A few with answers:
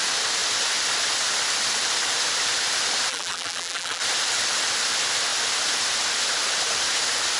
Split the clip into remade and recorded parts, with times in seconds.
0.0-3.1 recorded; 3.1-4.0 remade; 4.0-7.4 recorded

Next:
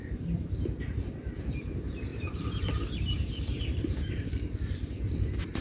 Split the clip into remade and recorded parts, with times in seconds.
0.0-2.1 recorded; 2.1-4.3 remade; 4.3-5.6 recorded

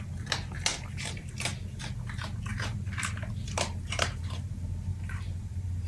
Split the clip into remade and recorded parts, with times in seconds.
0.0-0.7 recorded; 0.7-1.3 remade; 1.3-2.5 recorded; 2.5-4.2 remade; 4.2-4.9 recorded; 4.9-5.9 remade

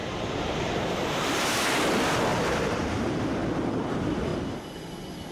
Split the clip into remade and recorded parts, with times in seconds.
0.0-3.4 remade; 3.4-3.9 recorded; 3.9-4.3 remade; 4.3-5.3 recorded

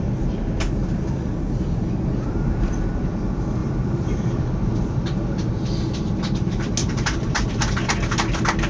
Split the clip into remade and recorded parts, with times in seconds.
0.0-2.1 recorded; 2.1-2.7 remade; 2.7-3.6 recorded; 3.6-4.5 remade; 4.5-6.8 recorded; 6.8-7.4 remade; 7.4-8.7 recorded

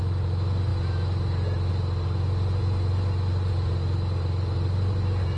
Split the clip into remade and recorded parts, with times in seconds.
0.0-5.4 recorded

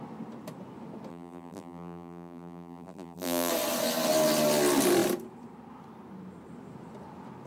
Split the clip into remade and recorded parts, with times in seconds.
0.0-1.1 recorded; 1.1-3.5 remade; 3.5-7.5 recorded